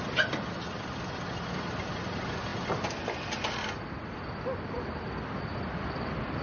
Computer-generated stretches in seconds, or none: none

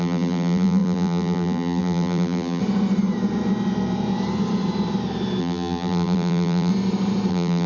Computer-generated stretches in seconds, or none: 0.0-2.6 (vocoder, BigVGAN v2); 5.4-6.7; 7.3-7.7

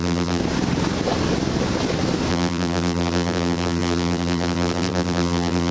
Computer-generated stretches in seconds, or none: 0.0-0.4 (vocoder, BigVGAN v2); 2.3-5.7

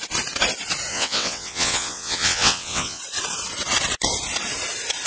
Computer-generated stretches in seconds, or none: 0.9-3.0 (vocoder, WaveNeXt)

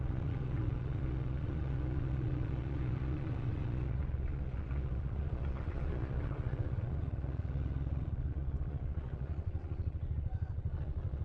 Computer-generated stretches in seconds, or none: 0.0-11.2 (vocoder, Vocos)

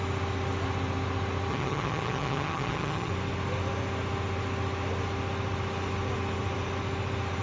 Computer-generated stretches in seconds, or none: 1.5-3.1 (vocoder, HiFi-GAN)